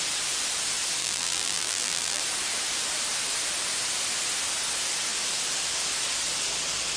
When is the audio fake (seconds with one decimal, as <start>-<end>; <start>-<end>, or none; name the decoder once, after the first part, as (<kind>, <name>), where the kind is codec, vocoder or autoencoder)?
1.0-2.2 (vocoder, BigVGAN v2)